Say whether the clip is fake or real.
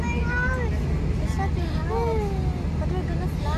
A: real